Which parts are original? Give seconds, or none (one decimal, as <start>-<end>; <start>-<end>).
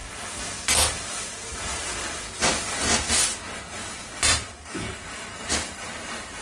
0.0-6.4